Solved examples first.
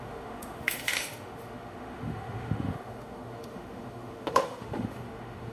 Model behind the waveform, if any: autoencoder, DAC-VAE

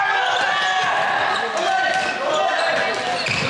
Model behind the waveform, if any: none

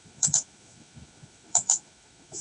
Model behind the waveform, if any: autoencoder, DAC-VAE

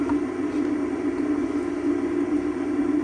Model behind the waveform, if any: none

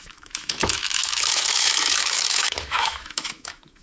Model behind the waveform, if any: autoencoder, DAC-VAE